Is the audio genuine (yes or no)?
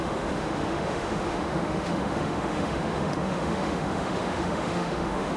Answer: no